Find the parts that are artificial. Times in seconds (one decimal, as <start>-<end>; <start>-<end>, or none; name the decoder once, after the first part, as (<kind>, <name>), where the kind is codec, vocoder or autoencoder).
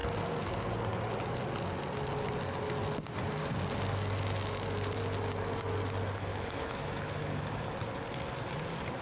6.3-7.6 (autoencoder, DAC-VAE)